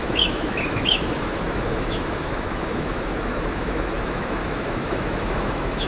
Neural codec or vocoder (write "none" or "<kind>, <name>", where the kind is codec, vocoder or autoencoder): autoencoder, DAC-VAE